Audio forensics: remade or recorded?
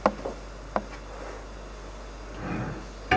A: recorded